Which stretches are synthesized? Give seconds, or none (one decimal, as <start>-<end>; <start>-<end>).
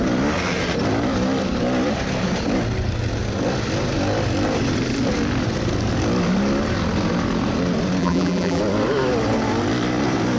8.0-8.6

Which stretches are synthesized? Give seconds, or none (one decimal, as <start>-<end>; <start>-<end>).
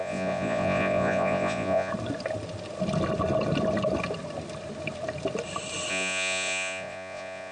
0.0-1.9; 5.9-7.5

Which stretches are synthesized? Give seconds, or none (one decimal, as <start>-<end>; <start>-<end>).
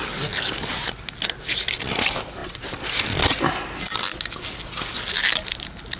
none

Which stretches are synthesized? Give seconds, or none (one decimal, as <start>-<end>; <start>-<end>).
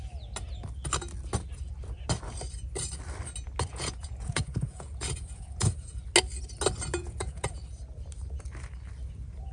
3.7-6.0; 7.0-7.6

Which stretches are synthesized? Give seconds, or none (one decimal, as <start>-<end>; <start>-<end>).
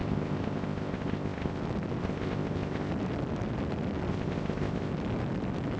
0.0-1.6; 2.0-2.9; 4.1-4.9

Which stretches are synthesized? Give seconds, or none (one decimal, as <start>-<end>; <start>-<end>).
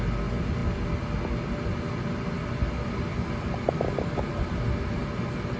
none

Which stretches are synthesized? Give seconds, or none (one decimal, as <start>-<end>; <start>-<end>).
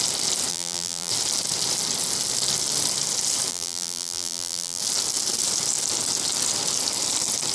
0.5-1.1; 3.5-4.8